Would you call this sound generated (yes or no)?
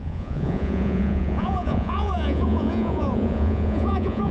yes